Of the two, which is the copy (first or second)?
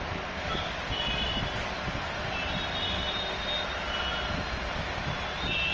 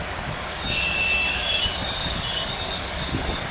second